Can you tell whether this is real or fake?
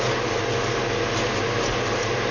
real